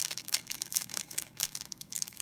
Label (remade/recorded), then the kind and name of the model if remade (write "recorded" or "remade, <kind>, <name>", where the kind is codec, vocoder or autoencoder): remade, codec, SNAC